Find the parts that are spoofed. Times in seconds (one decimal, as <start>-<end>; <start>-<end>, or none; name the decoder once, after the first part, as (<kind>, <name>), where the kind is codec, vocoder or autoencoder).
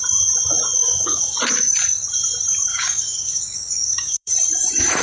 0.8-1.4 (codec, DAC); 2.7-4.3